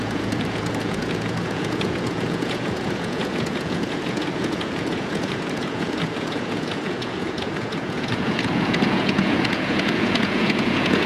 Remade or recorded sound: remade